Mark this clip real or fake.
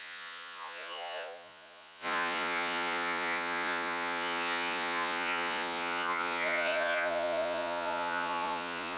fake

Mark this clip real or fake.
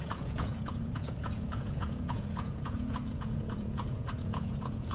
fake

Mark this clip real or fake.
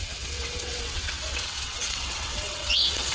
fake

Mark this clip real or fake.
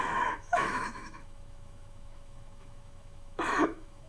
fake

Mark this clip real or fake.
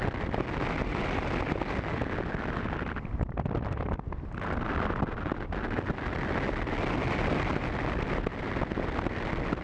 real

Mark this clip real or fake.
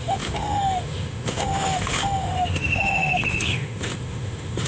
fake